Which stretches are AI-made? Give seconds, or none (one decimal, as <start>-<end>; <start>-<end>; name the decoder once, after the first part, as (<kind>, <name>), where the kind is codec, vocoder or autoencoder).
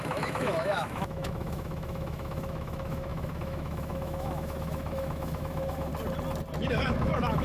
0.0-5.9 (autoencoder, DAC-VAE); 6.7-7.4